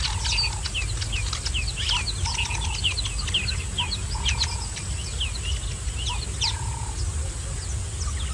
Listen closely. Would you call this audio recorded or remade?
recorded